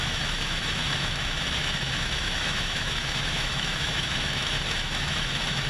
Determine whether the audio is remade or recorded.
remade